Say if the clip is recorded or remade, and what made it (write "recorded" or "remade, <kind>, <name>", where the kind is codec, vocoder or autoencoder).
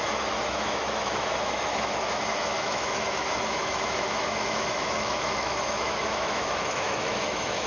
remade, autoencoder, DAC-VAE